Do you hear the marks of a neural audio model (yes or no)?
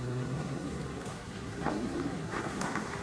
yes